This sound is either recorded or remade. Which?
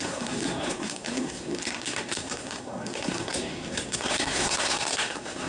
remade